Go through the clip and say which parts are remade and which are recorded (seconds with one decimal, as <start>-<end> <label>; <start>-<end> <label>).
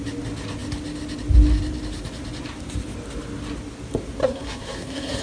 0.0-4.2 recorded; 4.2-5.2 remade